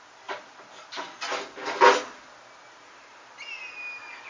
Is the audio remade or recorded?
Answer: recorded